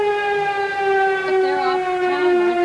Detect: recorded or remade recorded